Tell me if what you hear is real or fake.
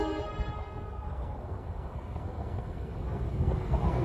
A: fake